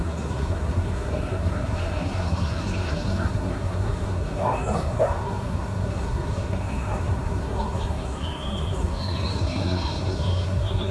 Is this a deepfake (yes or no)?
yes